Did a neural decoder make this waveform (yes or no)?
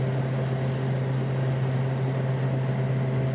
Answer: no